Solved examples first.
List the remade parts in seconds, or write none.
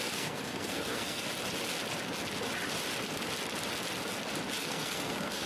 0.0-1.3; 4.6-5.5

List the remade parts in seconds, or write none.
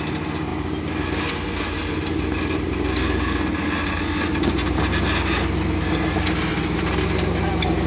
none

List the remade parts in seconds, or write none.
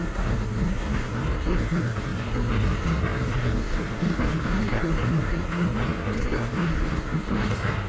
0.0-7.9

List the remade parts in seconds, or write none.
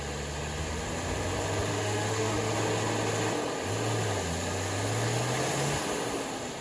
1.7-2.5